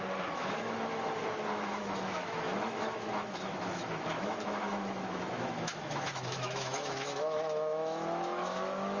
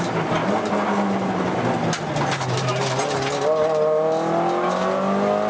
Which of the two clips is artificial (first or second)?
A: first